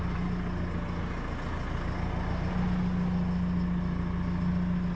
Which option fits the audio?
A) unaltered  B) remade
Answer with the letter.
A